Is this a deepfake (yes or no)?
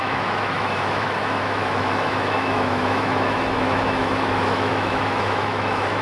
yes